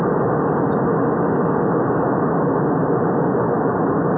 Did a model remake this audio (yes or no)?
no